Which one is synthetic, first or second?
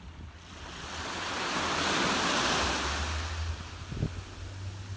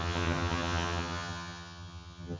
second